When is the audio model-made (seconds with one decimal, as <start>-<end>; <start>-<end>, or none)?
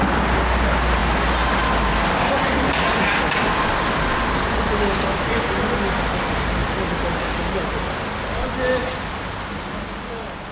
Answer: none